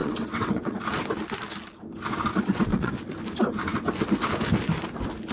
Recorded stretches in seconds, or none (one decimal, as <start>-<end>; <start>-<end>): 0.8-2.3; 2.9-5.3